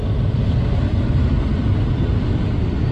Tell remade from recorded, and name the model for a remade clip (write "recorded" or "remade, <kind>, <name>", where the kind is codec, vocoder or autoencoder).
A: recorded